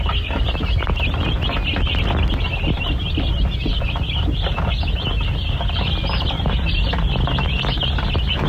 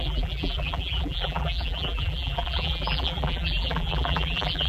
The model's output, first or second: second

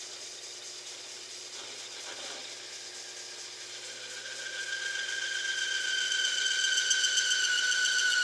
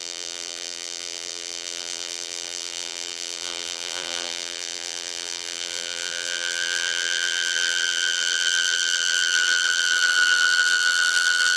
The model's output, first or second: second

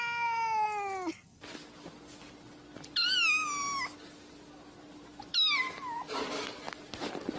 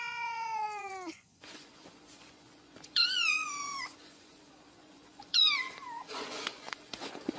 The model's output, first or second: second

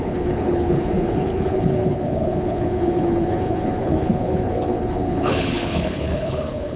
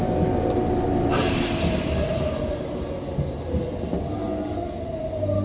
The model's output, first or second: first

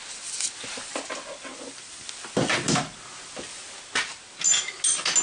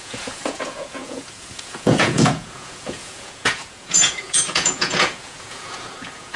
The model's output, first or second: second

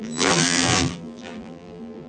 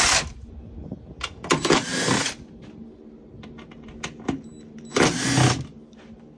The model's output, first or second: first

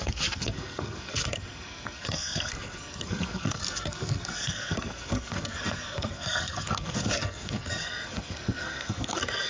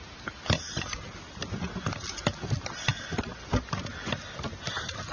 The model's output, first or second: first